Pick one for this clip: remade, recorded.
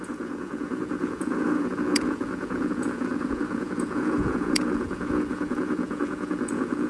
remade